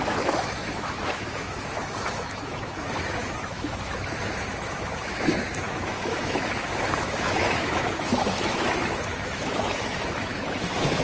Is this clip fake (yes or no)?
yes